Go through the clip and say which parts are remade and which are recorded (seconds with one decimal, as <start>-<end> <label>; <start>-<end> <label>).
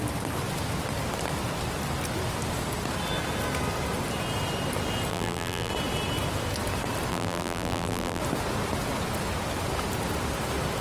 0.0-5.1 recorded; 5.1-5.7 remade; 5.7-7.1 recorded; 7.1-8.2 remade; 8.2-10.8 recorded